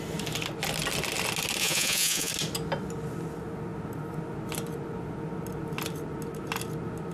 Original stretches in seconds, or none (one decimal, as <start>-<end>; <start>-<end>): 0.0-1.6; 2.3-7.1